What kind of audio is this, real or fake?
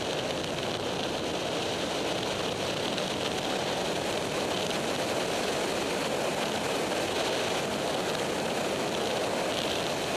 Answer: real